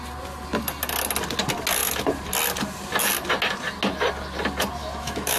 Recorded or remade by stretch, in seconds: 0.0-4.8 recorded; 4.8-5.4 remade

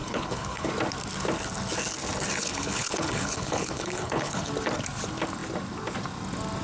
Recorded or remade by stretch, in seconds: 0.0-0.7 remade; 0.7-2.4 recorded; 2.4-4.5 remade; 4.5-6.6 recorded

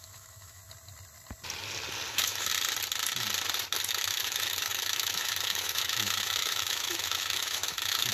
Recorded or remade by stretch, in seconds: 0.0-0.6 remade; 0.6-2.1 recorded; 2.1-2.5 remade; 2.5-3.9 recorded; 3.9-8.1 remade